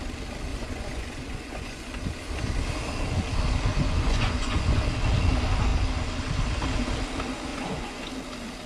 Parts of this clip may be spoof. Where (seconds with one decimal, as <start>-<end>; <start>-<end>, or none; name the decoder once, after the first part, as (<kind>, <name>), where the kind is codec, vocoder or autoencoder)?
0.5-2.0 (vocoder, Vocos); 3.7-4.8; 7.5-8.1